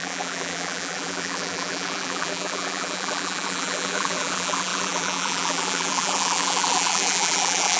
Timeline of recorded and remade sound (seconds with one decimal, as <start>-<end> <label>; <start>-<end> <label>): 0.0-7.8 remade